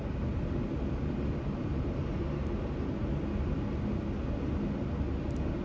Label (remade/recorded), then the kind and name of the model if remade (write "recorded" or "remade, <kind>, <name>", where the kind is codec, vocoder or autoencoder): recorded